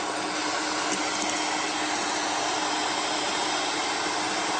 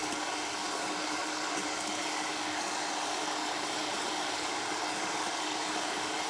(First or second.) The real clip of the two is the first